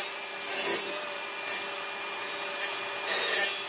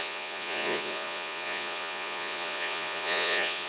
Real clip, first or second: first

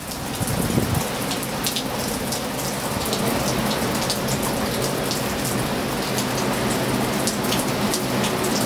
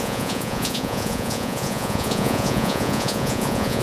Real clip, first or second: first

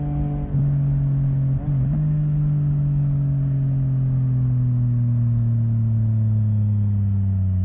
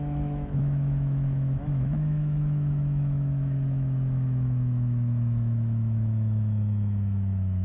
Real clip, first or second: first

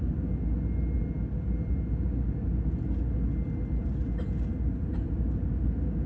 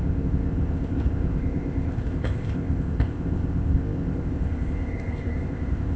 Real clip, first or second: first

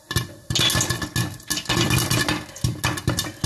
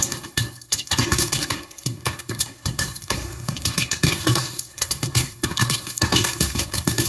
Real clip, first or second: first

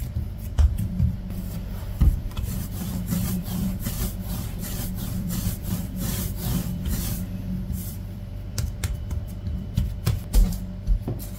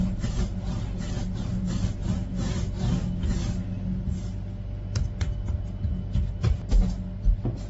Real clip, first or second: second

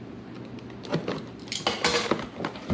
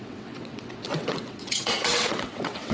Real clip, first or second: first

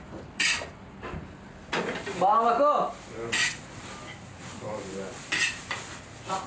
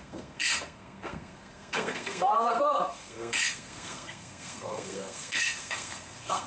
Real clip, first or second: first